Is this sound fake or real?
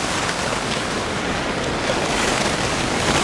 fake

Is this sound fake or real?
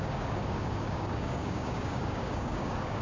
fake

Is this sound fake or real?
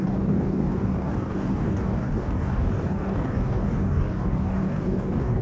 fake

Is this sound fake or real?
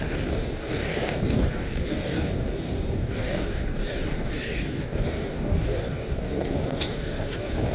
fake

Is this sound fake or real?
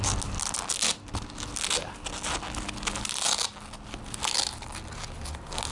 real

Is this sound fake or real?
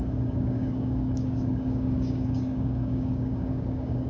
fake